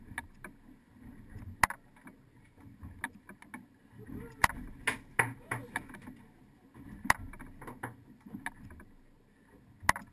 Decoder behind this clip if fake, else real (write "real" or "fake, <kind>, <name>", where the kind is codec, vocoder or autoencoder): real